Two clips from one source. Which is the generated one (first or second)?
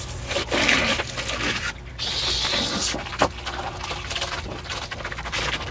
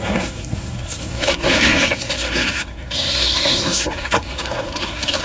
second